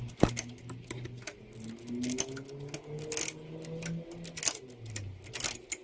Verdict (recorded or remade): recorded